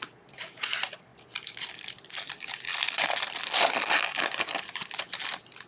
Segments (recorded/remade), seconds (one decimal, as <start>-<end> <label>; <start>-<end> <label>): 0.0-5.7 remade